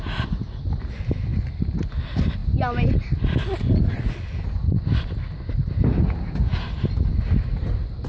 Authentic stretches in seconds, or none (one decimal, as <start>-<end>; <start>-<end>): 0.0-8.1